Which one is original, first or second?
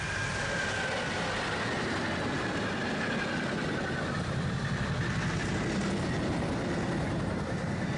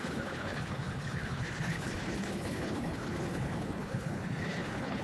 first